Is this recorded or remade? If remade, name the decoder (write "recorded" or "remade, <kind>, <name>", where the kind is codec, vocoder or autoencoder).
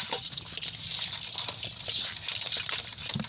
recorded